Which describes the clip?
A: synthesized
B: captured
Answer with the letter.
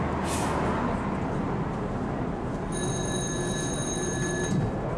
B